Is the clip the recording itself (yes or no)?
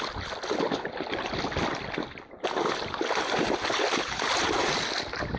yes